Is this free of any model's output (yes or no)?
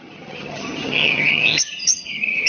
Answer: no